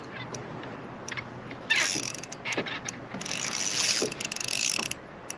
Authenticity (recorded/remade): recorded